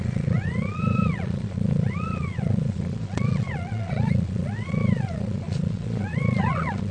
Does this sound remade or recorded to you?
remade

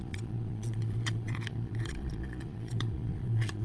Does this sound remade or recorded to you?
remade